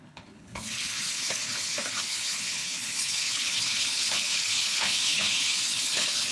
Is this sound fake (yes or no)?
yes